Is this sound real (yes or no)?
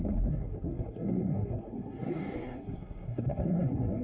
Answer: no